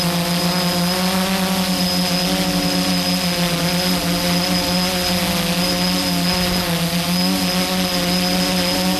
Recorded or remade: recorded